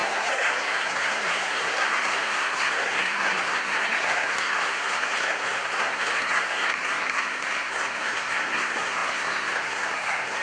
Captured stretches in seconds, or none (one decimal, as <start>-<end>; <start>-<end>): none